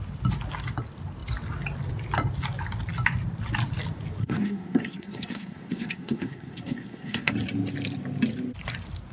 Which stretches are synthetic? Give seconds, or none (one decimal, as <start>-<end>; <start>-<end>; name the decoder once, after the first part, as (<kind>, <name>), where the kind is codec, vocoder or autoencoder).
4.2-7.3 (codec, SNAC)